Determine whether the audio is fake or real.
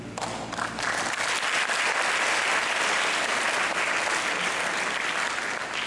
real